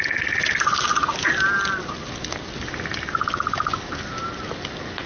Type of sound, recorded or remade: recorded